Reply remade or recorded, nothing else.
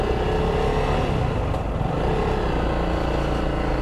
recorded